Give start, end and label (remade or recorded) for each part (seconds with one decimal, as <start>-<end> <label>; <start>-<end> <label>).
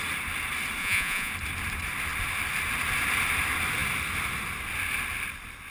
0.0-0.8 recorded; 0.8-1.3 remade; 1.3-5.7 recorded